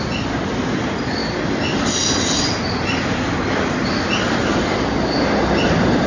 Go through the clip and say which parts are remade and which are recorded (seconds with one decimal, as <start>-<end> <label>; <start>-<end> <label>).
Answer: 0.0-6.1 recorded

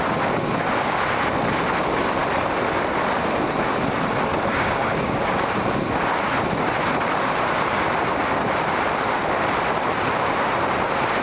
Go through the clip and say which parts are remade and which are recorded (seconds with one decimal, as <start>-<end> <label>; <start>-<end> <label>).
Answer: 0.0-4.3 recorded; 4.3-5.2 remade; 5.2-11.2 recorded

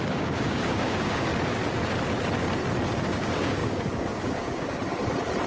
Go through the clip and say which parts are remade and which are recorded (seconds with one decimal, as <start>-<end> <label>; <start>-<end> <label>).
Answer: 0.0-1.3 remade; 1.3-3.0 recorded; 3.0-4.8 remade; 4.8-5.5 recorded

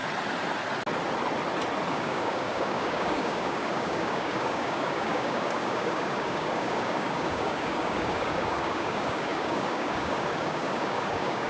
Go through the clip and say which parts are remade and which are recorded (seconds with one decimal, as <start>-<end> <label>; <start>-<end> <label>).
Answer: 0.0-1.9 recorded; 1.9-11.5 remade